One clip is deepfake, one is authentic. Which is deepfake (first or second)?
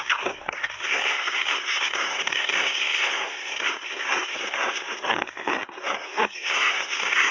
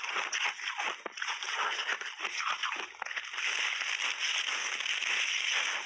first